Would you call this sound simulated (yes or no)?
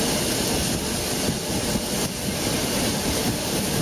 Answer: no